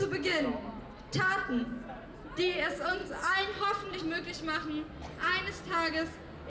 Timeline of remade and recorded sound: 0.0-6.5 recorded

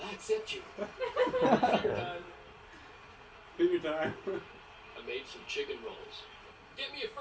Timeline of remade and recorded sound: 0.0-7.2 recorded

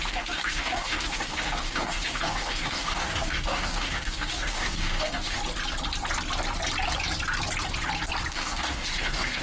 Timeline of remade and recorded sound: 0.0-5.4 remade; 5.4-8.3 recorded; 8.3-9.4 remade

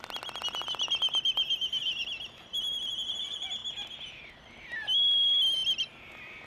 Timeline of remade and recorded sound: 0.0-6.5 recorded